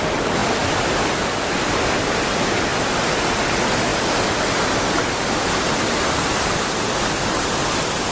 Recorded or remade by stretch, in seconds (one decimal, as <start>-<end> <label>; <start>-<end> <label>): 0.0-8.1 recorded